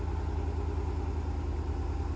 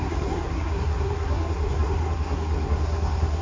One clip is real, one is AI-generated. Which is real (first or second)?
first